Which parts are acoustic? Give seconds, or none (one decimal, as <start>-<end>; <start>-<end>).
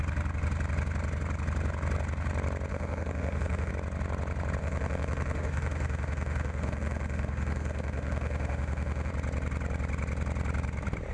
0.0-2.7; 3.7-4.6; 9.1-11.1